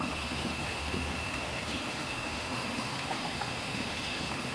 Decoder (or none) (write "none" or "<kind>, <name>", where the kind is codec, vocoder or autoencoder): autoencoder, DAC-VAE